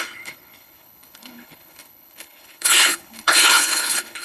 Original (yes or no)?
no